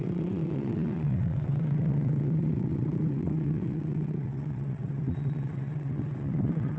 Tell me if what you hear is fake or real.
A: fake